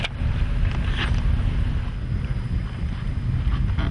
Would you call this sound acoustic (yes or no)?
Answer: yes